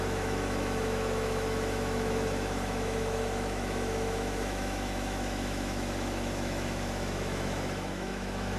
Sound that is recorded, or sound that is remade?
remade